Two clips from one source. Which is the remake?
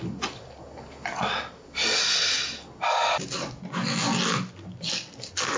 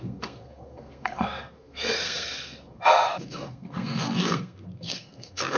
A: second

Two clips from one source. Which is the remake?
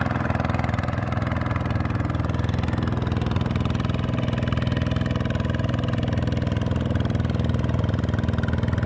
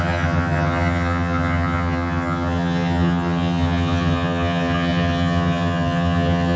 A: second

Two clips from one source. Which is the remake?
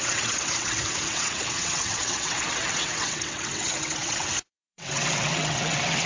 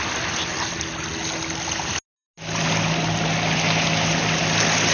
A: first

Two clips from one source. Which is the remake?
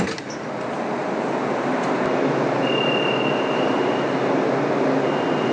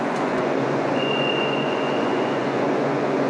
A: second